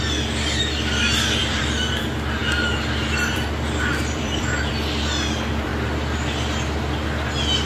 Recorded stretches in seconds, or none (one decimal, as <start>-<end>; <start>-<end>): 0.0-1.4; 2.0-2.4; 4.7-7.7